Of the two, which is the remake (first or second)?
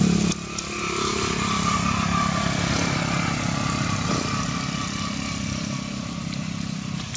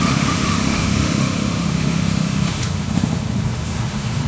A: second